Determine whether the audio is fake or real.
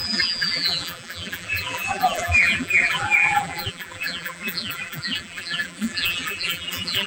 fake